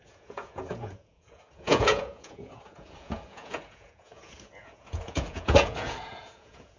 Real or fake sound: fake